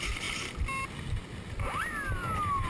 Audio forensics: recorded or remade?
recorded